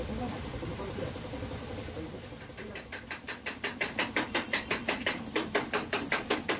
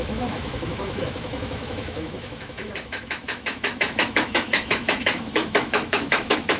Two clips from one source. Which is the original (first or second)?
first